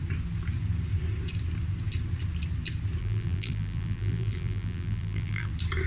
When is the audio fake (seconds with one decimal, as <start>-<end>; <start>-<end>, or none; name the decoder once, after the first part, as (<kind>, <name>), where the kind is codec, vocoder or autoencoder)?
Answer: 3.0-5.5 (vocoder, BigVGAN v2)